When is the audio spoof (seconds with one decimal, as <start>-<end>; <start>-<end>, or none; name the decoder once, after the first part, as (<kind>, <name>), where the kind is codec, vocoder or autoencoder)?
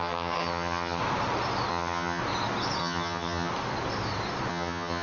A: 0.0-1.0 (vocoder, HiFi-GAN); 1.7-2.2; 2.8-3.5; 4.5-5.0